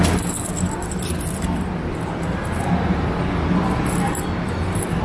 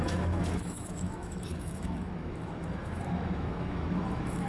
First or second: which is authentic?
first